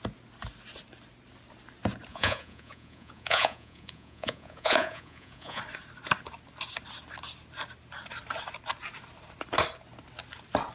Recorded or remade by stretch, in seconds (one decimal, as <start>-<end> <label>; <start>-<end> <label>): 0.0-2.1 recorded; 2.1-5.6 remade; 5.6-10.7 recorded